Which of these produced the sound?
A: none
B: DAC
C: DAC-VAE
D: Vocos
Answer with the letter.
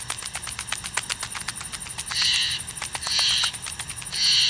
A